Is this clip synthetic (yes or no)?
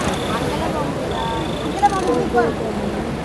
no